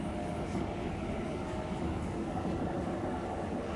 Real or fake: fake